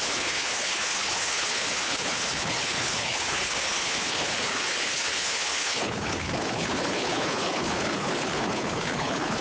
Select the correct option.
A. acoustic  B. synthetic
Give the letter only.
B